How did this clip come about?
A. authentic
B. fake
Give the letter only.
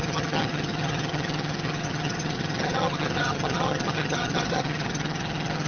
B